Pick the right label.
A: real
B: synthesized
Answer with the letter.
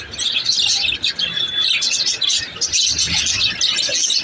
A